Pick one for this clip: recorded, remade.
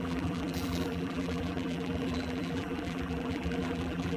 remade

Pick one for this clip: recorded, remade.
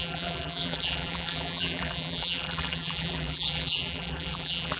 remade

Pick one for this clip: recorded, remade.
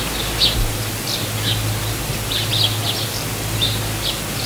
remade